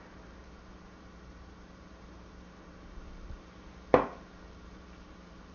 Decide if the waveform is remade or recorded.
remade